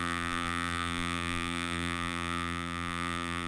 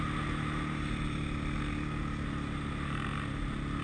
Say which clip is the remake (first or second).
first